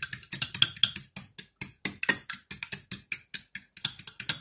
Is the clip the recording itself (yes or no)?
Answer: yes